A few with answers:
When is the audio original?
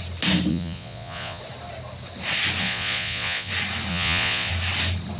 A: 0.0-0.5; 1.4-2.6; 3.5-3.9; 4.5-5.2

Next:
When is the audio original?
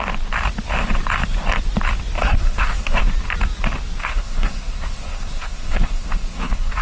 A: 0.0-2.2; 3.0-4.0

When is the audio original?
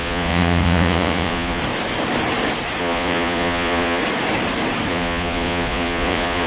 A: 1.6-2.8; 4.0-4.9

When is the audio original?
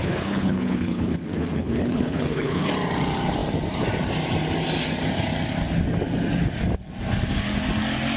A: 2.7-8.2